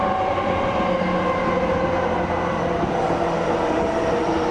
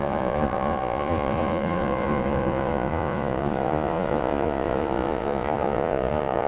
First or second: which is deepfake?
second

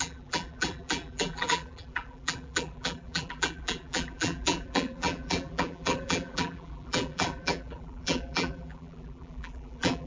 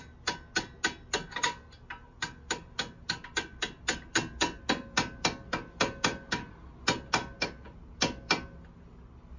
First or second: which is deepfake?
first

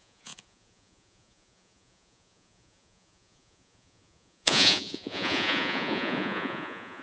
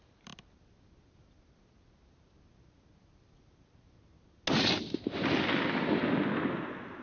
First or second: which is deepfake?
first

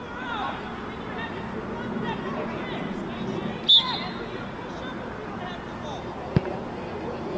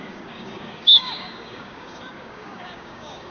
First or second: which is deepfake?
second